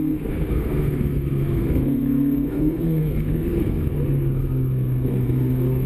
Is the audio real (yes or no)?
no